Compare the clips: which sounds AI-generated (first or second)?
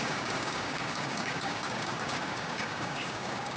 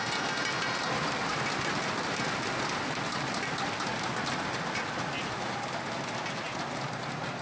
first